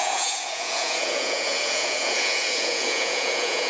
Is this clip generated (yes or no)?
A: yes